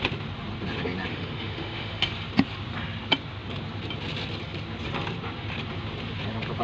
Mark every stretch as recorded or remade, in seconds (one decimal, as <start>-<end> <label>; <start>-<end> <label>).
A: 0.0-1.1 recorded; 1.1-2.0 remade; 2.0-6.6 recorded